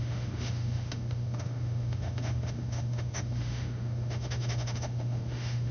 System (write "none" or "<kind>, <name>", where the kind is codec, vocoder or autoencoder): autoencoder, DAC-VAE